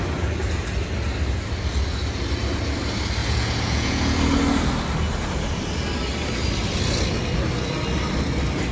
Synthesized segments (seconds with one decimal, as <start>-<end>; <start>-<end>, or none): 3.2-4.2